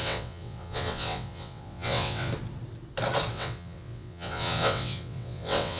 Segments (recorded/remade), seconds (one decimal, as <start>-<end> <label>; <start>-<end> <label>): 0.0-2.3 remade; 2.3-3.3 recorded; 3.3-5.8 remade